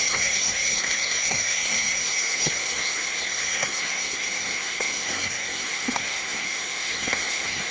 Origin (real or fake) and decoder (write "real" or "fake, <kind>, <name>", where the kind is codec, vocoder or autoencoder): fake, codec, SNAC